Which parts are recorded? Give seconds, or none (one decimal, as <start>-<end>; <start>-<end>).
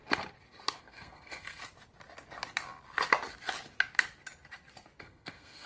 0.0-0.8; 1.6-5.0